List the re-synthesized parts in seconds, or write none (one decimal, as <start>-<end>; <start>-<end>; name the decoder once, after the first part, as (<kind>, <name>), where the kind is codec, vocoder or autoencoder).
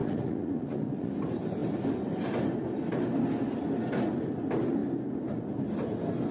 0.0-1.1 (vocoder, Vocos)